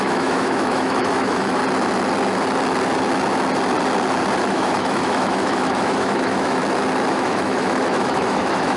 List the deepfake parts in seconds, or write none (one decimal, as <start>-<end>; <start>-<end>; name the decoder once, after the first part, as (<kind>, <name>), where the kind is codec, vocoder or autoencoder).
0.0-1.6 (autoencoder, DAC-VAE); 4.5-6.6; 7.1-8.8